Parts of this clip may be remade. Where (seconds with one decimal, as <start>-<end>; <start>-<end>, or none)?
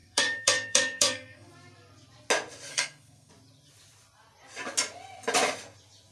0.0-1.5; 2.7-3.3